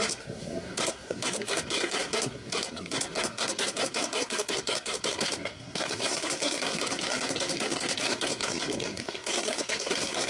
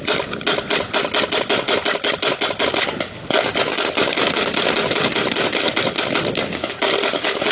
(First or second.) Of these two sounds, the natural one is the second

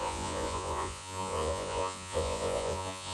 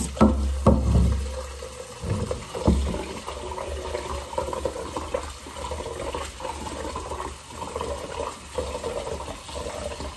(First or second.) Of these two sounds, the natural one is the second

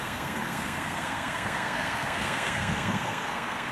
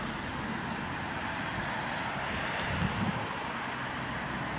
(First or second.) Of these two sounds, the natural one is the second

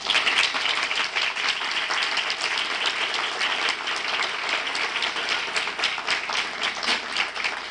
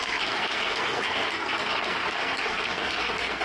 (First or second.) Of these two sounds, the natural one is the first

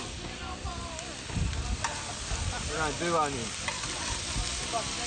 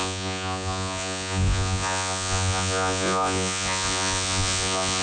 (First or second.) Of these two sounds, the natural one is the first